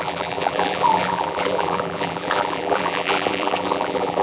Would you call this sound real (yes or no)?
no